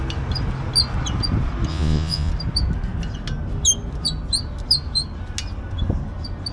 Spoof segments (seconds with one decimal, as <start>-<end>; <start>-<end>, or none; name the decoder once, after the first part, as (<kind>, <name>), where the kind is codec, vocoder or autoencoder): 1.7-2.3 (vocoder, Vocos)